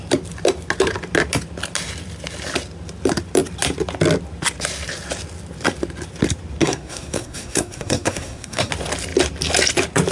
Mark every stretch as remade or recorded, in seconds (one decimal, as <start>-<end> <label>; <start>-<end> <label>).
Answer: 0.0-6.6 recorded; 6.6-8.7 remade; 8.7-10.1 recorded